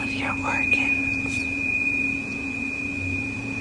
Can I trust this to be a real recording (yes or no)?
no